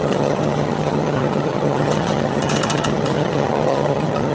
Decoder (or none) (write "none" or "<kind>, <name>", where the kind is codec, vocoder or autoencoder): vocoder, HiFi-GAN